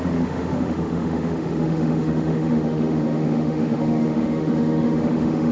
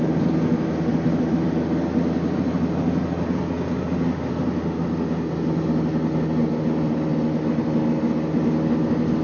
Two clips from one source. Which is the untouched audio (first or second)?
second